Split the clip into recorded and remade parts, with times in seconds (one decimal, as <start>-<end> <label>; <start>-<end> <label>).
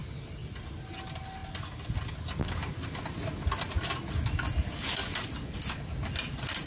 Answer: 0.0-6.7 recorded